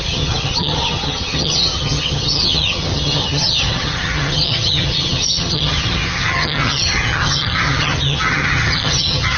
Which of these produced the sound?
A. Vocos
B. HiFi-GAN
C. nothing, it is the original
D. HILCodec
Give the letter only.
B